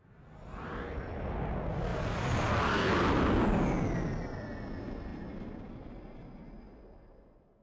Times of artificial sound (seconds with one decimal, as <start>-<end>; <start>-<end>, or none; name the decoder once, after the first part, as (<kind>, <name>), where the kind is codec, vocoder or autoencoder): 1.9-2.5 (vocoder, BigVGAN v2)